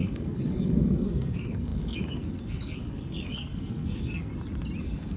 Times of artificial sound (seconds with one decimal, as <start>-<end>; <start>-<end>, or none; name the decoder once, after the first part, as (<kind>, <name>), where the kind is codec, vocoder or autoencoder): 0.0-4.3 (codec, SNAC); 4.8-5.2